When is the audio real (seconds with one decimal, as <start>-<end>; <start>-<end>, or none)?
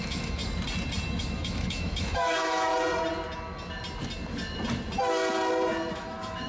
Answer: 0.4-1.2; 2.7-5.9